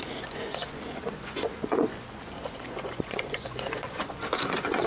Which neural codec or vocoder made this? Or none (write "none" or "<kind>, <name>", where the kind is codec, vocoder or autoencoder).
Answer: vocoder, Vocos